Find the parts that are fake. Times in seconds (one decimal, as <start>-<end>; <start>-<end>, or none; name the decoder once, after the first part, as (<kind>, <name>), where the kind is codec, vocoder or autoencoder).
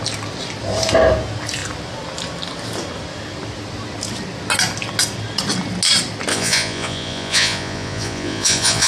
6.3-8.9 (vocoder, Vocos)